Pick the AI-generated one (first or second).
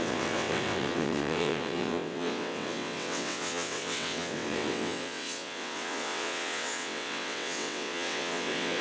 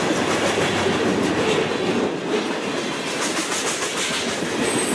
first